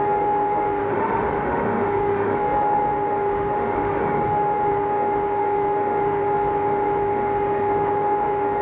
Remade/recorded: remade